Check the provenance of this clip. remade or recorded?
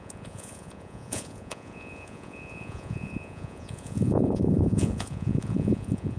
remade